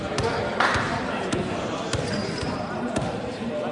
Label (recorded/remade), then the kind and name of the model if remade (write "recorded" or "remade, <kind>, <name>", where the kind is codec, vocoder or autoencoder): remade, vocoder, BigVGAN v2